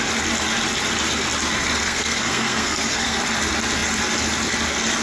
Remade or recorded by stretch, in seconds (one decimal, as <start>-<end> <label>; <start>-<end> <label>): 0.0-1.8 recorded; 1.8-3.2 remade; 3.2-5.0 recorded

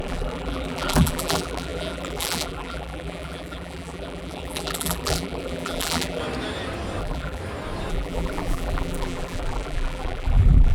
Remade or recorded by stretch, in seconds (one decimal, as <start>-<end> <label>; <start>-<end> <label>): 0.0-6.2 remade; 6.2-7.0 recorded; 7.0-7.4 remade; 7.4-7.9 recorded; 7.9-10.7 remade